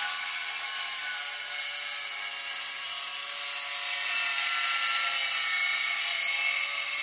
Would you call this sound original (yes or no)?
yes